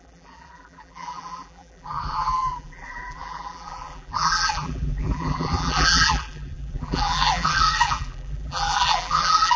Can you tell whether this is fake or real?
fake